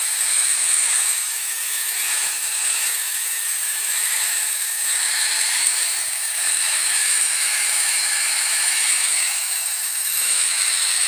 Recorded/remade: remade